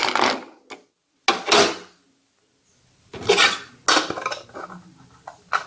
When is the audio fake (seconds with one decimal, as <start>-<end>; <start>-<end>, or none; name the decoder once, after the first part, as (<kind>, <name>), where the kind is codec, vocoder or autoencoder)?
none

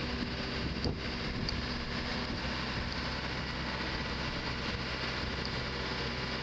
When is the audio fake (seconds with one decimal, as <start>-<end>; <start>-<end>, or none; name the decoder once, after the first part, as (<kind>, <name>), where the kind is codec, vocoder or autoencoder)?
none